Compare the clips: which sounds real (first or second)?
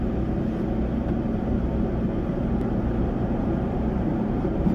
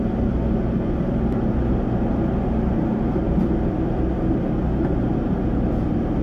second